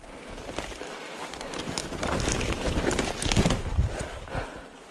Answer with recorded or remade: recorded